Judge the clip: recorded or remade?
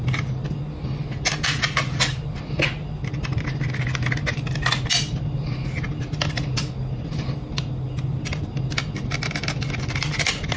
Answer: recorded